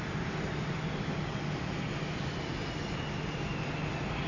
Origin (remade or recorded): recorded